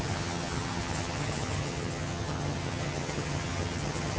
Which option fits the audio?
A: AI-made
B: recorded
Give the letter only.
A